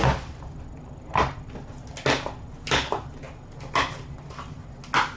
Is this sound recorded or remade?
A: recorded